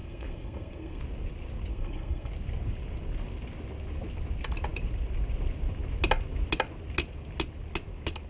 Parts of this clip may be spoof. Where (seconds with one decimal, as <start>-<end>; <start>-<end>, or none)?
0.0-1.0; 1.7-2.3